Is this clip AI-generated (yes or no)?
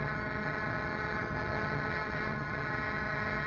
yes